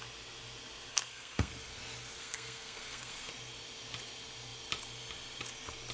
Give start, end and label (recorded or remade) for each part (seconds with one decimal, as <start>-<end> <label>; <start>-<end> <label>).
0.0-0.9 recorded; 0.9-1.5 remade; 1.5-2.2 recorded; 2.2-3.3 remade; 3.3-5.9 recorded